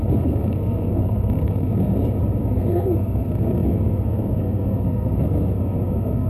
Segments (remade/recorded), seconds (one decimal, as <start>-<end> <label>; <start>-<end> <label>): 0.0-1.9 remade; 1.9-2.4 recorded; 2.4-6.3 remade

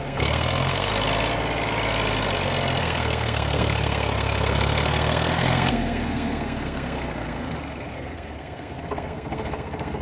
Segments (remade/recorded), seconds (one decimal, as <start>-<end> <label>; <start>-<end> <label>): 0.0-0.9 remade; 0.9-2.8 recorded; 2.8-10.0 remade